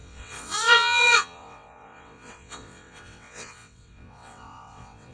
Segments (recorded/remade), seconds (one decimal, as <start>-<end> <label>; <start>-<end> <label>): 0.0-5.1 remade

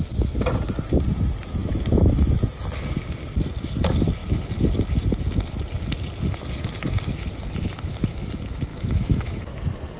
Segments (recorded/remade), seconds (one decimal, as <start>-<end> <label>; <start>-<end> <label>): 0.0-1.6 recorded; 1.6-2.6 remade; 2.6-8.7 recorded; 8.7-9.6 remade; 9.6-10.0 recorded

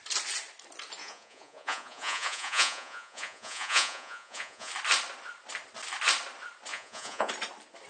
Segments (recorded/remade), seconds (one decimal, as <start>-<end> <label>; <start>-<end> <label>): 0.0-1.0 recorded; 1.0-4.7 remade; 4.7-6.7 recorded; 6.7-7.3 remade; 7.3-7.9 recorded